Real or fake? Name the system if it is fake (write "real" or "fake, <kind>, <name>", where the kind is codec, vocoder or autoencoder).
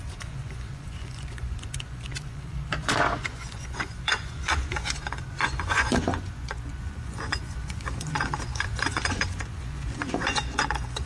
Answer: fake, vocoder, Vocos